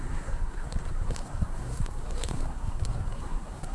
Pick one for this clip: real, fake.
fake